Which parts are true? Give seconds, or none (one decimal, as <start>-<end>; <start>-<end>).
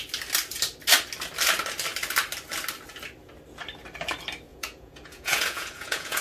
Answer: 0.0-4.5